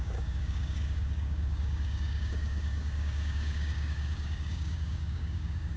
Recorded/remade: remade